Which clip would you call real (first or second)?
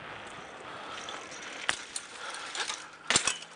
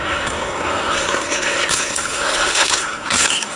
first